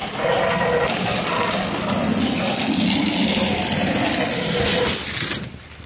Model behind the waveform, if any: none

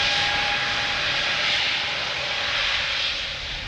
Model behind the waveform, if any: none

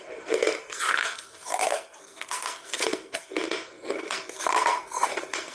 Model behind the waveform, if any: codec, SNAC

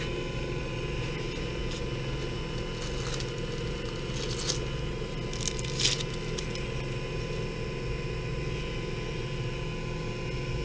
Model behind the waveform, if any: none